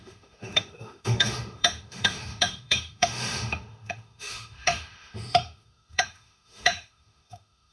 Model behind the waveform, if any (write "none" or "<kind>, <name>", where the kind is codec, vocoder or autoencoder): autoencoder, DAC-VAE